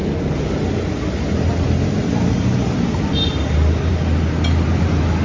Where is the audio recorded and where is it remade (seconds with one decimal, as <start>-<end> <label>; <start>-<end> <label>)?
0.0-5.2 recorded